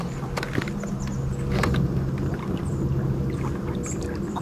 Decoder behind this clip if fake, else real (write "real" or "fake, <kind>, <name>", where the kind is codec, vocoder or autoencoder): real